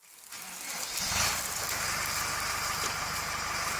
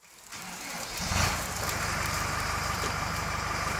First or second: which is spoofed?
second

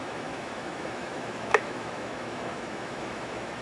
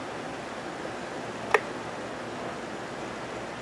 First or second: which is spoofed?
first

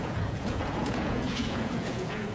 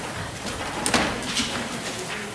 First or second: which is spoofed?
first